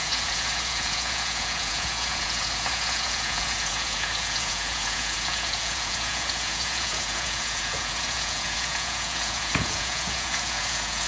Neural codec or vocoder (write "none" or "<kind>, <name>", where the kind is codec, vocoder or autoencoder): vocoder, Vocos